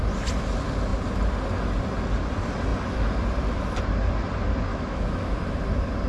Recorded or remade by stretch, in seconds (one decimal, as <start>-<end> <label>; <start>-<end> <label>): 0.0-4.7 recorded; 4.7-5.3 remade; 5.3-6.1 recorded